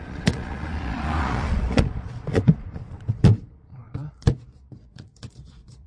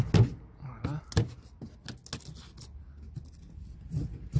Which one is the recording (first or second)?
second